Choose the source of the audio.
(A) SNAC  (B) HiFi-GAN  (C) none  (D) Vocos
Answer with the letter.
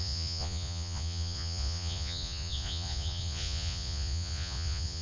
D